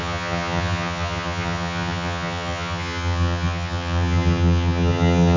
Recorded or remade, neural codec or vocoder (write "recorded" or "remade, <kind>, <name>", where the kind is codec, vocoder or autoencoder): remade, vocoder, HiFi-GAN